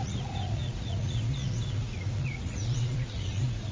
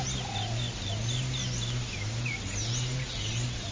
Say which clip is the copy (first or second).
first